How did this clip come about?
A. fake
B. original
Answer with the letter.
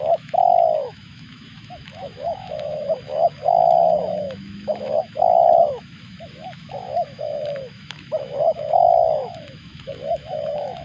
A